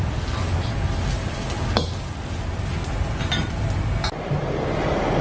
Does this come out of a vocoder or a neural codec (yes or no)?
no